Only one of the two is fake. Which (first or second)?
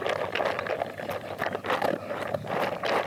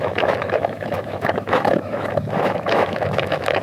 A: second